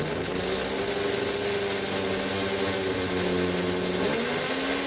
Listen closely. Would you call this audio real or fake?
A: real